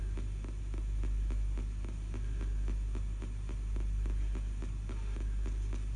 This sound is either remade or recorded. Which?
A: recorded